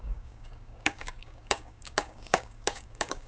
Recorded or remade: remade